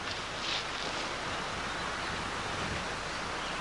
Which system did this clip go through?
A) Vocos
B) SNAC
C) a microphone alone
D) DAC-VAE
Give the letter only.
C